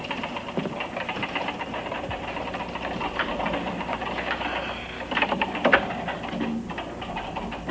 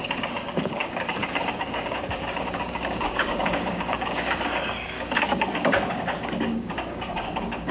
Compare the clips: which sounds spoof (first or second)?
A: second